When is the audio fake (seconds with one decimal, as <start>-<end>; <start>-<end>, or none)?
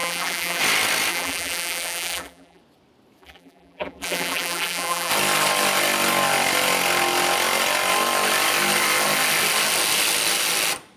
0.0-0.6; 1.1-2.6; 3.2-5.1